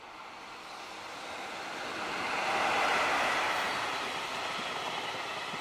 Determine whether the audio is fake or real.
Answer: real